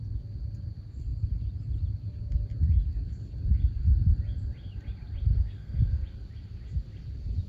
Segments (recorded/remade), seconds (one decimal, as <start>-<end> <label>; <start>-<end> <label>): 0.0-5.3 recorded; 5.3-5.8 remade; 5.8-7.5 recorded